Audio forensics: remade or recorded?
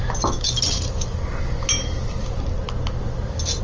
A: recorded